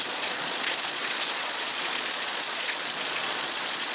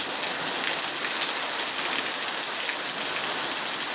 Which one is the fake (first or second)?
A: first